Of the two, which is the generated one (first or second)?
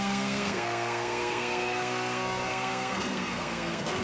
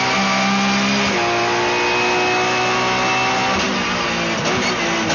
first